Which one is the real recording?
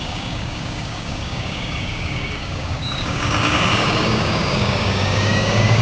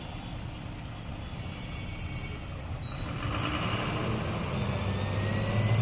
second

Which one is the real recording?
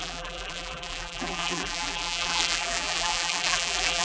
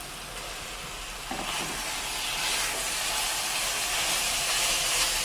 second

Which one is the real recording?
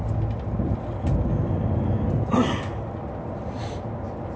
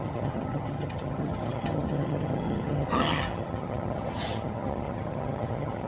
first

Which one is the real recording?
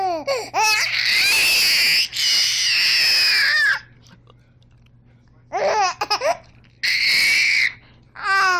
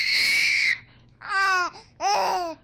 first